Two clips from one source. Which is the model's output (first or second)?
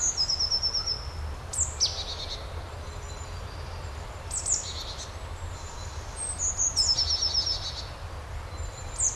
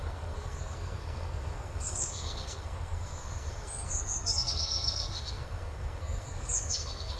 second